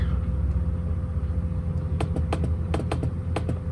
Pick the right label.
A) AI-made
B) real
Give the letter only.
B